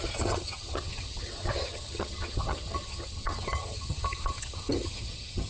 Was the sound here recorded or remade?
remade